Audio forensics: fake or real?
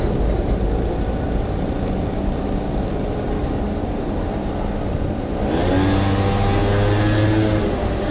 real